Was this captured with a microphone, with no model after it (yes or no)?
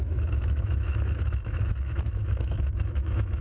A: no